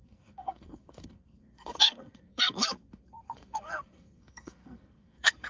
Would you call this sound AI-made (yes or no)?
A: yes